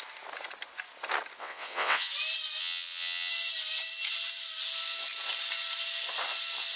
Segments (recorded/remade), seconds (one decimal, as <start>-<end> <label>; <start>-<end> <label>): 0.0-1.4 recorded; 1.4-2.1 remade; 2.1-2.6 recorded; 2.6-3.3 remade; 3.3-6.8 recorded